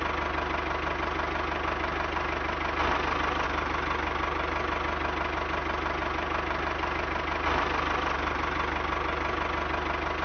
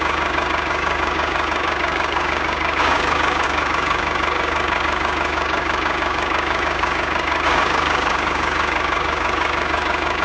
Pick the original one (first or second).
first